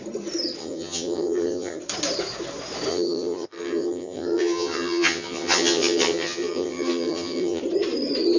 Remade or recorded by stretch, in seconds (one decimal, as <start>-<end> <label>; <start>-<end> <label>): 0.0-0.6 recorded; 0.6-1.8 remade; 1.8-2.9 recorded; 2.9-7.6 remade; 7.6-8.4 recorded